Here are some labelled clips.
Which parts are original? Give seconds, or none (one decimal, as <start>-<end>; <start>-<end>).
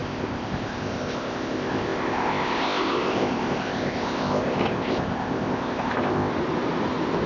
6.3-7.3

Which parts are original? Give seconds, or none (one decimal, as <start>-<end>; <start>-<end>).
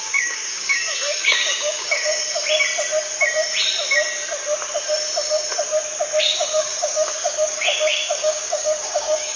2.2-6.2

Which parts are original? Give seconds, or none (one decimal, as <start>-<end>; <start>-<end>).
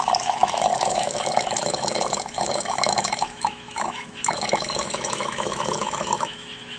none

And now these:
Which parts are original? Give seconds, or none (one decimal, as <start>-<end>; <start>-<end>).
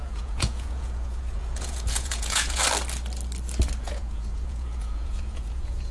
2.6-3.8